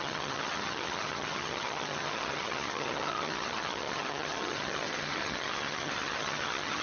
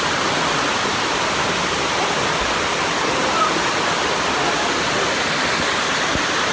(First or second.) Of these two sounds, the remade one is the first